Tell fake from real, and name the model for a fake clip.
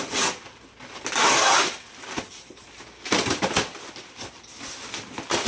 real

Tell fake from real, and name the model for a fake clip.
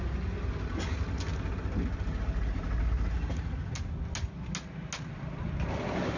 real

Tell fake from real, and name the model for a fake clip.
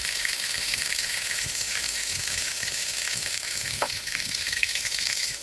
fake, autoencoder, DAC-VAE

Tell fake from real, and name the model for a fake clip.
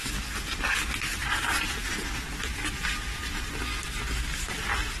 real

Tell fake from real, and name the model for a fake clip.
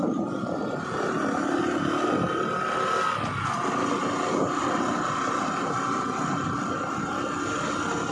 real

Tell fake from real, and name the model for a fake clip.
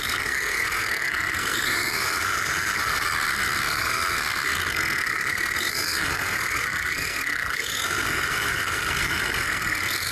fake, codec, SNAC